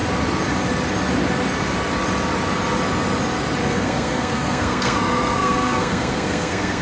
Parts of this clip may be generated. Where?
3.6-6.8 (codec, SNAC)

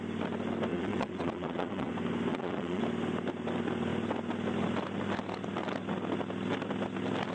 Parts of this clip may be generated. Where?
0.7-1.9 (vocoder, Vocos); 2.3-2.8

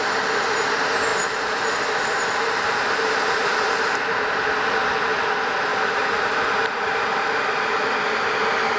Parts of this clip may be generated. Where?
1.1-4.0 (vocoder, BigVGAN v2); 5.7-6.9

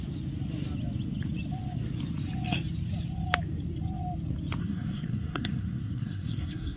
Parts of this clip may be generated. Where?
4.6-6.8 (codec, SNAC)

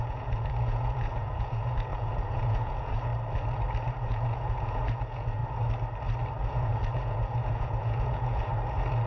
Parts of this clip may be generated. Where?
0.0-3.1 (vocoder, Vocos); 4.0-5.4; 6.4-8.5